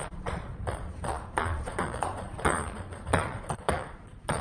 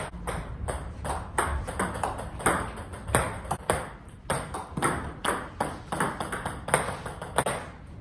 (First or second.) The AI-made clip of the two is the first